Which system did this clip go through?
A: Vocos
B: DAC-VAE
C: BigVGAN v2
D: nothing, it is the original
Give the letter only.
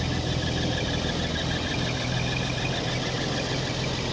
D